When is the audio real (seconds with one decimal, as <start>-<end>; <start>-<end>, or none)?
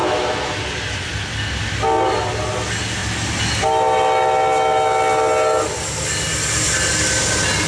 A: 0.6-7.7